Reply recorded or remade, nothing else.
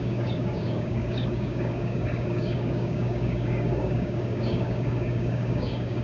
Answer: remade